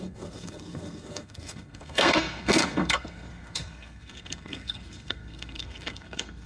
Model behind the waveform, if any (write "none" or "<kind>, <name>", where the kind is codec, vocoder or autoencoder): codec, SNAC